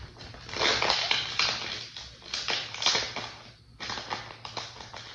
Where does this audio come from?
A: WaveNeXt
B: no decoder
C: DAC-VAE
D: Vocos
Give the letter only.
B